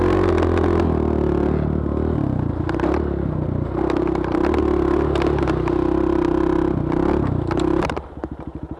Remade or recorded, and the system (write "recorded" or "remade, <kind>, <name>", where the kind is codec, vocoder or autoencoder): recorded